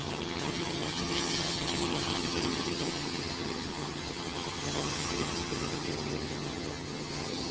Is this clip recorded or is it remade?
remade